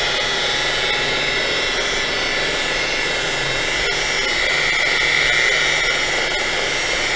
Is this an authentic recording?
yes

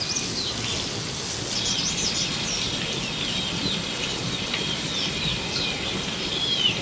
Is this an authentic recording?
yes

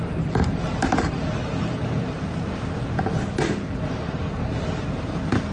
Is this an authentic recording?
no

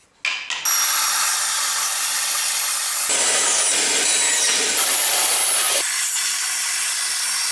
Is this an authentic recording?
yes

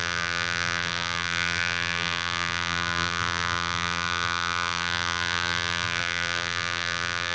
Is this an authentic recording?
no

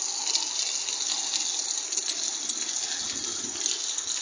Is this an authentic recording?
yes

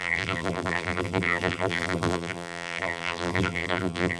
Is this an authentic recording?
no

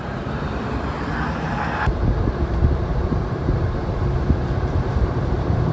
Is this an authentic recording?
no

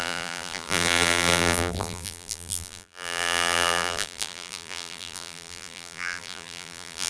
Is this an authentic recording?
no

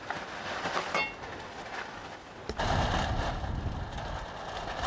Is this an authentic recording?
yes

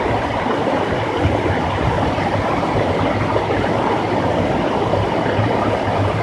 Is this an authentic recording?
no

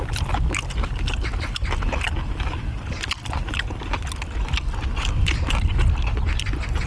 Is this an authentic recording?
yes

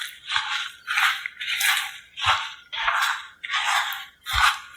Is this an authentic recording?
no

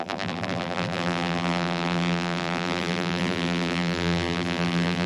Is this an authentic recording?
no